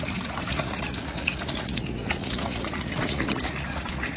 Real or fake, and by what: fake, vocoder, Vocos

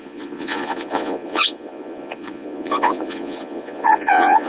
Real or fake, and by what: fake, vocoder, Vocos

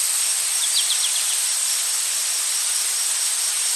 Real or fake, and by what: real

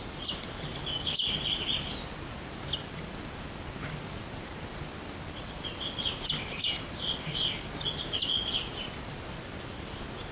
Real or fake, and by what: real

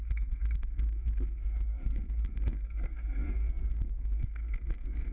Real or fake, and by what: fake, codec, SNAC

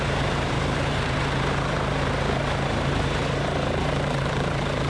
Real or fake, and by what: fake, vocoder, BigVGAN v2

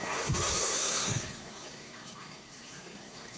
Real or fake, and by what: fake, codec, SNAC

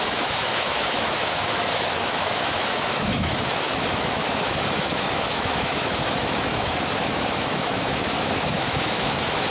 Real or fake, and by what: fake, autoencoder, DAC-VAE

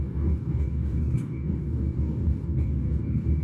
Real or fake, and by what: fake, codec, DAC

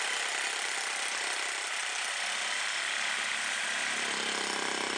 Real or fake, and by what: real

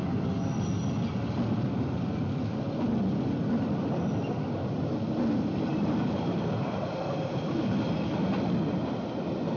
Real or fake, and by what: real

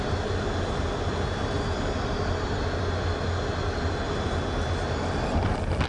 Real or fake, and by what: real